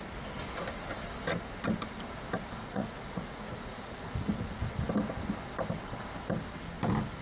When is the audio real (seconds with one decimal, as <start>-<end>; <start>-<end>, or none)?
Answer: 0.0-2.6; 3.9-7.2